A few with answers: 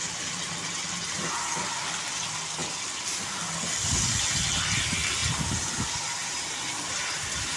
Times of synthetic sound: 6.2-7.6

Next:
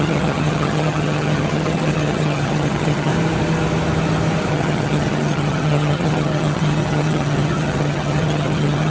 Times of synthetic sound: 0.0-3.1; 4.5-8.9

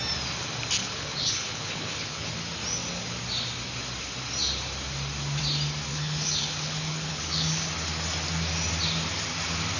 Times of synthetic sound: 0.8-2.3; 5.9-7.7